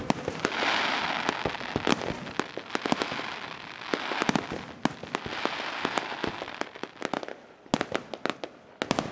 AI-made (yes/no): no